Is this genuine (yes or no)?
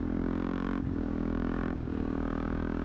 no